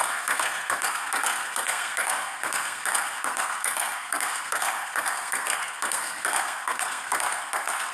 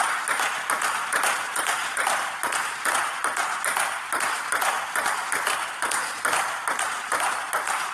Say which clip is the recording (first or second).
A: second